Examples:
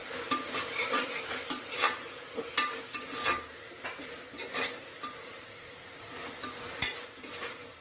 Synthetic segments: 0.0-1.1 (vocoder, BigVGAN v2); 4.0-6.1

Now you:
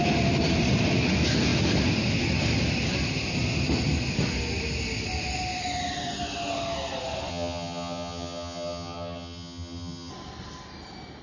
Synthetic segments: 7.3-10.1 (vocoder, HiFi-GAN)

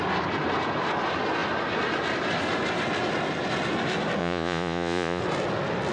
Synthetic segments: 4.2-5.2 (vocoder, Vocos)

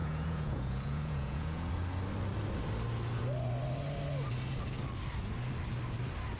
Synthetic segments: 0.0-1.7 (vocoder, Vocos)

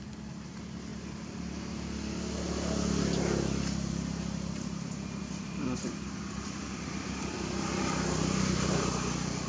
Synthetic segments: none

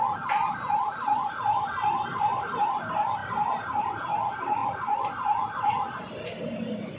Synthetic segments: 3.2-3.9 (vocoder, BigVGAN v2)